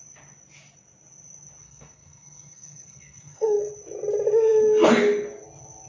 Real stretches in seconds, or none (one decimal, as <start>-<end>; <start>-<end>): 0.0-1.6; 3.7-5.9